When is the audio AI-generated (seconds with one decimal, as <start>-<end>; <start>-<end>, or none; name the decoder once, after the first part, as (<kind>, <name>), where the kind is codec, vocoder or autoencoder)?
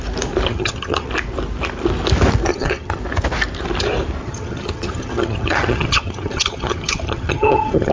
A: 0.5-1.1 (vocoder, HiFi-GAN); 2.5-3.0; 4.2-7.9